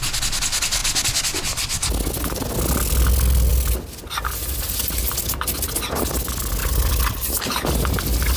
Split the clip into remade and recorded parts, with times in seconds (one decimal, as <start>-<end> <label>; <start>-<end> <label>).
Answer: 0.0-6.6 recorded; 6.6-7.7 remade; 7.7-8.4 recorded